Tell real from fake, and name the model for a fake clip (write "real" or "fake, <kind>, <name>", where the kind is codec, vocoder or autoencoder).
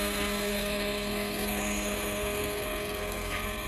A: fake, codec, SNAC